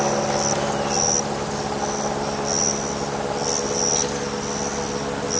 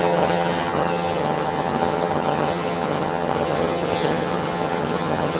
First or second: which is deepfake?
second